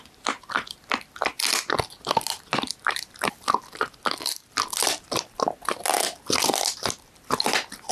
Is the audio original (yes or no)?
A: yes